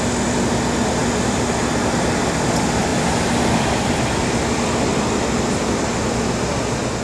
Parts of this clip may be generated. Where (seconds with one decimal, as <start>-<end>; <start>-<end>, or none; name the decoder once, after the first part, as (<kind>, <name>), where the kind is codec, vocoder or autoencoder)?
2.9-5.8 (vocoder, BigVGAN v2)